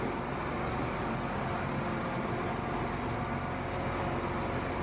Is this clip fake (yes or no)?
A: no